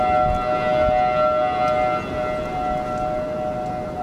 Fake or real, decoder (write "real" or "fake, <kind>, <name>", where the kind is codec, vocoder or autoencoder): real